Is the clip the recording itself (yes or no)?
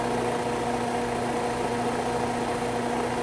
yes